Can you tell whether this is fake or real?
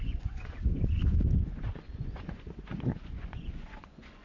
fake